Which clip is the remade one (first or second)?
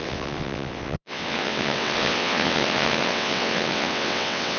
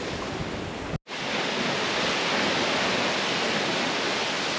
first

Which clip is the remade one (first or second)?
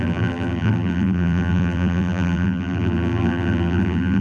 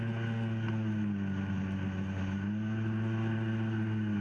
first